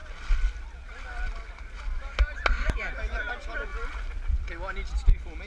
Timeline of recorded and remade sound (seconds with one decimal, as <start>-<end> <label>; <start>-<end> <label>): 0.0-5.5 recorded